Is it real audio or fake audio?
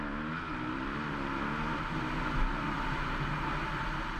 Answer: real